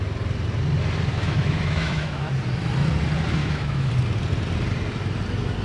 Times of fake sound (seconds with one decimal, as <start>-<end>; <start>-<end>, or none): 1.1-2.3; 3.4-3.9